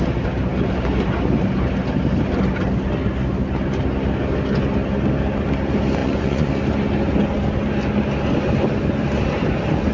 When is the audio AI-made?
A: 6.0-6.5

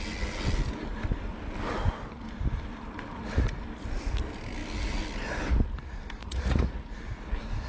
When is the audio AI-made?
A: 6.2-7.3